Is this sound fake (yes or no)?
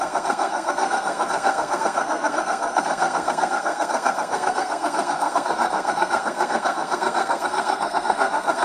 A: yes